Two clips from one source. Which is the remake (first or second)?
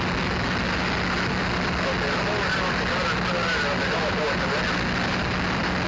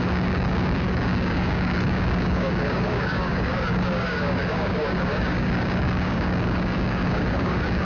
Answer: second